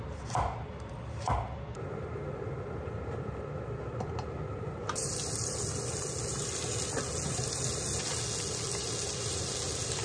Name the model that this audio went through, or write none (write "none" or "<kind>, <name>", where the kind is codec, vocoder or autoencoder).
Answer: none